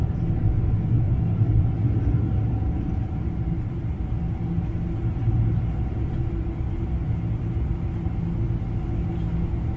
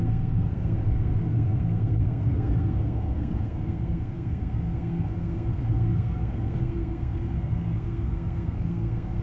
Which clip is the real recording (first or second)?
first